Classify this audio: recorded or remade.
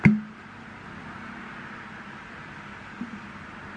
recorded